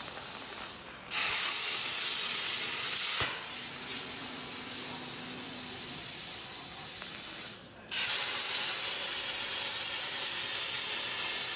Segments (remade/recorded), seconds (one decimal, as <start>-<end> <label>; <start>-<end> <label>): 0.0-11.6 recorded